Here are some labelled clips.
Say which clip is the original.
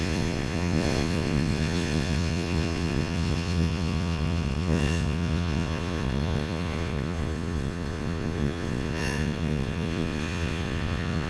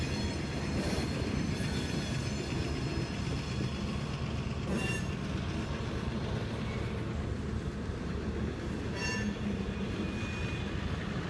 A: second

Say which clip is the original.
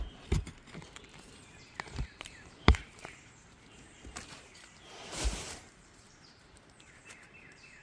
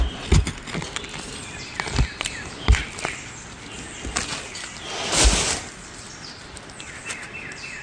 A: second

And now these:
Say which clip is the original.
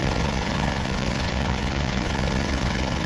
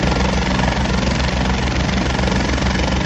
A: second